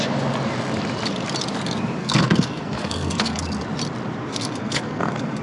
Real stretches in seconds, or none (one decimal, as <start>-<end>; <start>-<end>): 0.0-2.0; 3.4-4.3